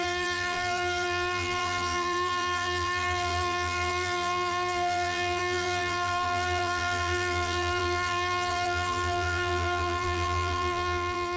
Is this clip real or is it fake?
fake